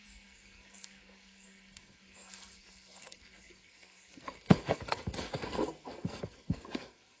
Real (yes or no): no